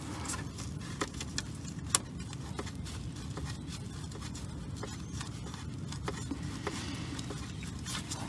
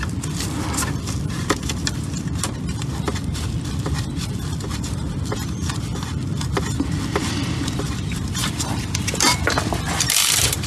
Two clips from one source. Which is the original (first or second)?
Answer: first